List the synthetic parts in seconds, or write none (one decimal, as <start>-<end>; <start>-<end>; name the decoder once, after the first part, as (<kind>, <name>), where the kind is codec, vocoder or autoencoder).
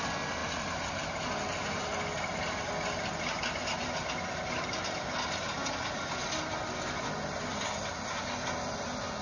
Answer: none